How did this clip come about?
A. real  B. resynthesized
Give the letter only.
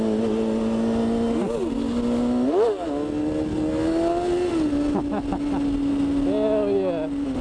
A